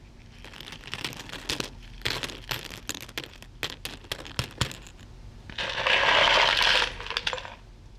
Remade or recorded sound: recorded